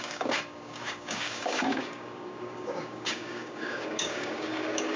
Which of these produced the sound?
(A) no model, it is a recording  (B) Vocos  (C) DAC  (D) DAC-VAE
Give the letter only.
C